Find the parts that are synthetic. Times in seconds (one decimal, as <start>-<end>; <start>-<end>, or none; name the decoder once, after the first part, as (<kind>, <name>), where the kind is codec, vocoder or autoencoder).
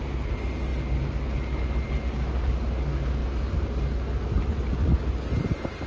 none